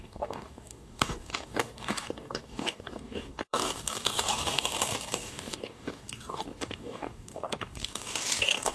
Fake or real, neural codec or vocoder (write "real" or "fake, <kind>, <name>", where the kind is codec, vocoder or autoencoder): fake, codec, DAC